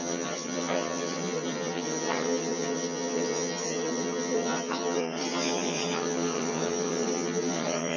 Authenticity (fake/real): fake